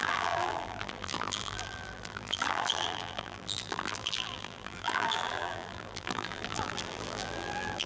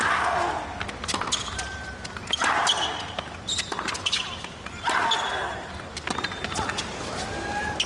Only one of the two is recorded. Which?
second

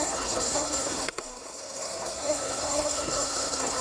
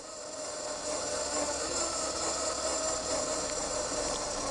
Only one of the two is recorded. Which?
second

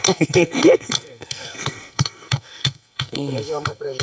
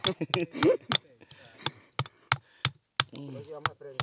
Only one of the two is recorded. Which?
second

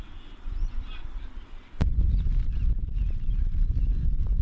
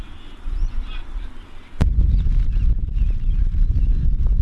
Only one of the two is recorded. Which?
second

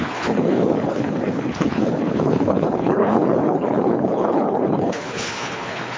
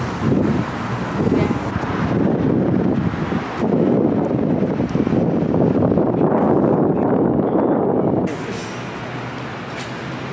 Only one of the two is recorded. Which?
second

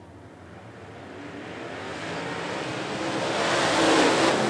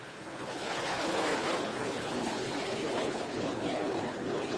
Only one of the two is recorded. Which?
first